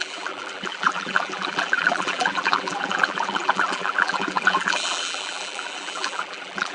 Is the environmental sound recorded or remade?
remade